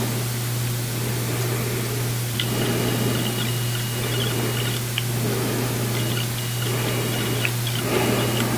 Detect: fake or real real